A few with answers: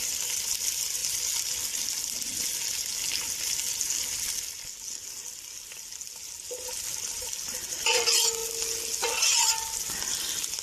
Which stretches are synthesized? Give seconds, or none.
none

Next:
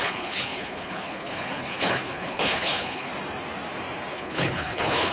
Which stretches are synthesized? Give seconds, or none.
0.0-3.1 (codec, HILCodec); 4.1-5.1

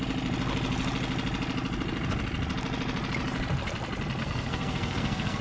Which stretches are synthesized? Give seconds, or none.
4.2-5.4 (codec, SNAC)

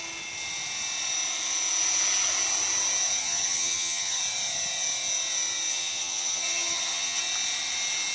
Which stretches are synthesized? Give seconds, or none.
3.2-4.2 (vocoder, HiFi-GAN); 5.7-7.2

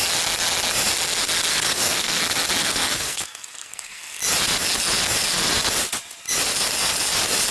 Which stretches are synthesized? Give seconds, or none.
1.5-2.2 (codec, SNAC); 2.6-4.2

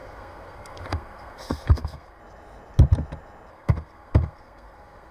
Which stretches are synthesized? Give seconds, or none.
0.0-2.2 (codec, SNAC); 3.5-5.1

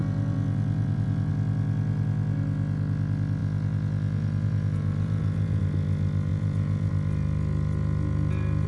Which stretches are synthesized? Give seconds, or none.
0.0-1.3 (vocoder, Vocos); 3.4-5.6; 6.3-6.9